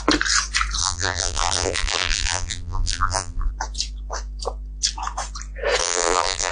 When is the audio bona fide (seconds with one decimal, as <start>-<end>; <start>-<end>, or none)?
0.0-0.8; 3.5-5.8